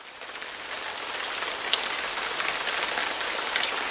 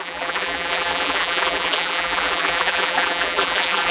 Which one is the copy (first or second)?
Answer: second